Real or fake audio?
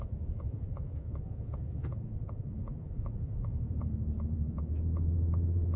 fake